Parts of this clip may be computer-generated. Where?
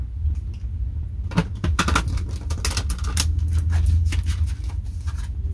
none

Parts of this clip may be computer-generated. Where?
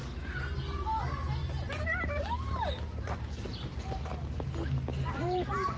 1.4-3.3; 4.9-5.8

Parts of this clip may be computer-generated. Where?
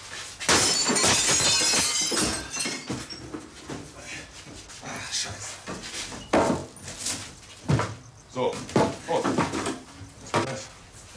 none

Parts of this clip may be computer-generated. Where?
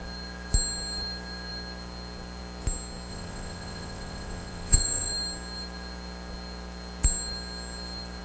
3.1-5.1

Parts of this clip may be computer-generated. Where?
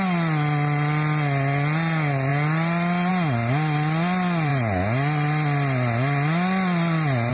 none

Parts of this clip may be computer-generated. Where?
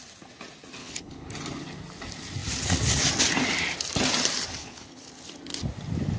0.8-1.3; 4.6-5.1